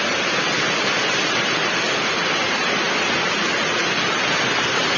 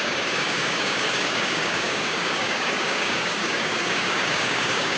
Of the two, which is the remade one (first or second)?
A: second